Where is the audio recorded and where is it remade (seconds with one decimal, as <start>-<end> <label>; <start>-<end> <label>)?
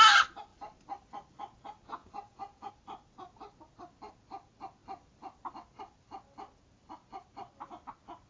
0.0-2.0 recorded; 2.0-2.7 remade; 2.7-8.3 recorded